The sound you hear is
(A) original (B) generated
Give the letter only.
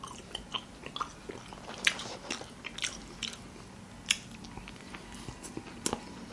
A